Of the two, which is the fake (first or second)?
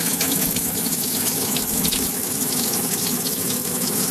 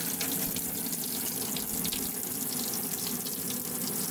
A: first